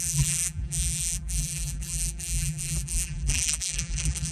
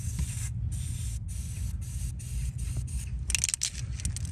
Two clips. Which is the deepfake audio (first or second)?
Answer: first